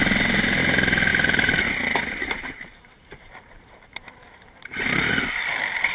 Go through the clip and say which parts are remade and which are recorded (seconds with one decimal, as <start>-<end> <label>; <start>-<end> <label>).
0.0-1.1 recorded; 1.1-1.7 remade; 1.7-2.2 recorded; 2.2-5.1 remade; 5.1-5.9 recorded